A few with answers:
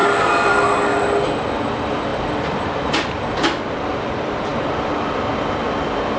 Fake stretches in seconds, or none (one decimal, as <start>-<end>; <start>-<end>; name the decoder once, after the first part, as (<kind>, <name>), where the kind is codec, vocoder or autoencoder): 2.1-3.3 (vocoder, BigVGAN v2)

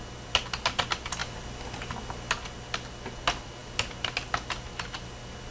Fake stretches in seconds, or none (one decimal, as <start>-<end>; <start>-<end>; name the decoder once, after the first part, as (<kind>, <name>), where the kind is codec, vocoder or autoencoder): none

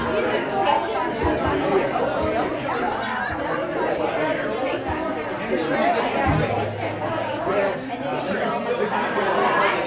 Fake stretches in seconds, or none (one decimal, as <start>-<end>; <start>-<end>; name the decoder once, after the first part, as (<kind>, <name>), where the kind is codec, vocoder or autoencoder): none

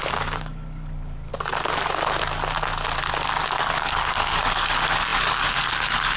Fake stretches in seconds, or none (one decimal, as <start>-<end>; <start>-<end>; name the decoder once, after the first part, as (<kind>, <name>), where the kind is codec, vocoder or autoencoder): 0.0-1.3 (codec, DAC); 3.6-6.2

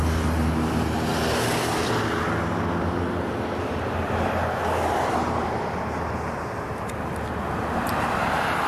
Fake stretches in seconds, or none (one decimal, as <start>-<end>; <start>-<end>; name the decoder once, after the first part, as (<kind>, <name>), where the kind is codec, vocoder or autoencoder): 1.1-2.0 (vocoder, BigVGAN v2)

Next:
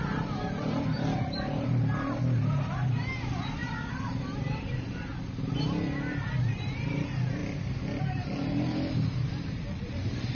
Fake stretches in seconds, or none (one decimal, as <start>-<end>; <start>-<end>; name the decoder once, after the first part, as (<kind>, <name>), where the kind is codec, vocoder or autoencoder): 0.0-5.1 (vocoder, BigVGAN v2); 6.1-7.4; 8.0-10.3

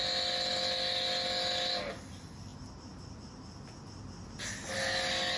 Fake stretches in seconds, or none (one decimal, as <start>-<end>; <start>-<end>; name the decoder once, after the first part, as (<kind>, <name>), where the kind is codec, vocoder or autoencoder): none